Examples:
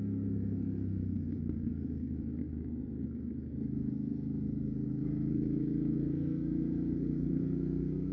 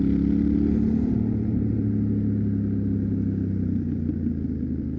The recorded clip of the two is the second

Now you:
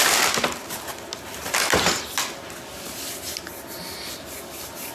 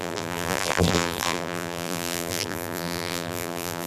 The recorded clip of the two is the first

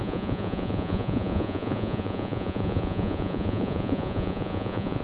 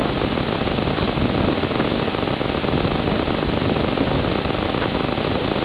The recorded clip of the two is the second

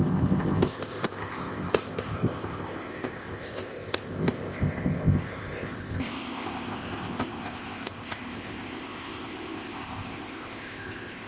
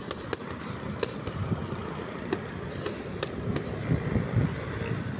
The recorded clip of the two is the second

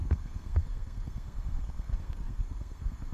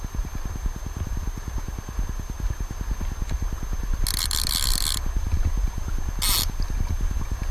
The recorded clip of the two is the second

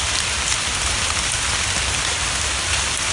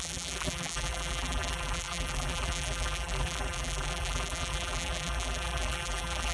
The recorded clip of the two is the first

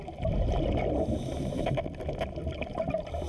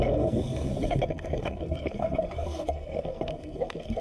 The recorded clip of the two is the first